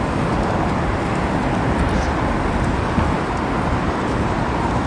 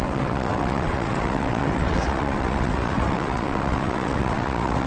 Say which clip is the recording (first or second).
first